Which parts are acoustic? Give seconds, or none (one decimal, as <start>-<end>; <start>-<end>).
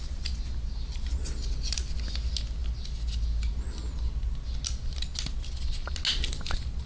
0.0-6.9